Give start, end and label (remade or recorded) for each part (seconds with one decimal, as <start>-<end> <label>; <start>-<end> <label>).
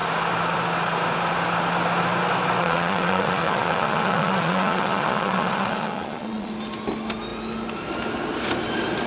0.0-2.6 recorded; 2.6-6.5 remade; 6.5-9.1 recorded